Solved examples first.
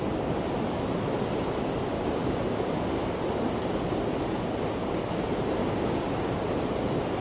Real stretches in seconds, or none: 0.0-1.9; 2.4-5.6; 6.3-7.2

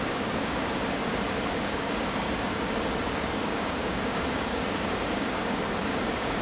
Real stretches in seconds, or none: 1.0-1.6

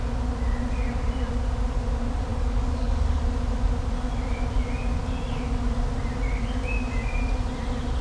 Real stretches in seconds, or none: 0.0-2.3; 3.2-8.0